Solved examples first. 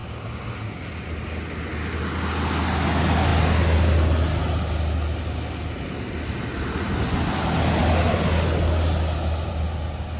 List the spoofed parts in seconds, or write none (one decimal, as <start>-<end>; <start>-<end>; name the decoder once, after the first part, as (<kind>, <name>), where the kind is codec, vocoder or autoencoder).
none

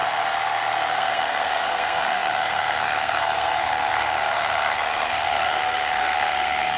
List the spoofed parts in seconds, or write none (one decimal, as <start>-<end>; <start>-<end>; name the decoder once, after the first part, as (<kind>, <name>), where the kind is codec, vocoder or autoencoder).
0.9-6.8 (codec, SNAC)

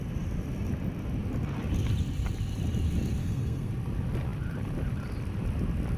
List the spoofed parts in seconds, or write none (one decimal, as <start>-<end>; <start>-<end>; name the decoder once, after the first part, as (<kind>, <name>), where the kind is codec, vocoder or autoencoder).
3.2-3.7 (codec, SNAC)

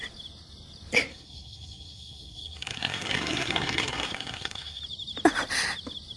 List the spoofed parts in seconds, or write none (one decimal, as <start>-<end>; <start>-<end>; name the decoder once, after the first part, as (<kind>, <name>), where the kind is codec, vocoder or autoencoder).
1.1-4.8 (codec, SNAC)

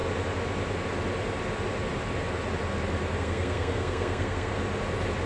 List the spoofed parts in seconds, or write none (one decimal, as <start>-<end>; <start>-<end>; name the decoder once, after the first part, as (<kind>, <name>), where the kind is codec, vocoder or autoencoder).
3.2-4.5 (codec, SNAC)

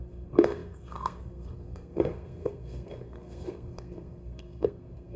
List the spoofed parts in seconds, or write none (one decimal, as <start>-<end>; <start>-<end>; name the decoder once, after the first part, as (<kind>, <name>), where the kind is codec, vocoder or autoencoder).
0.0-5.2 (codec, SNAC)

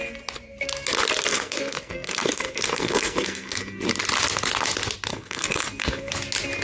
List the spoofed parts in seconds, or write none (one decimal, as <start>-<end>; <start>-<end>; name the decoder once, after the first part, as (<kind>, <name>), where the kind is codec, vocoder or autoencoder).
1.3-3.8 (codec, SNAC); 5.1-6.1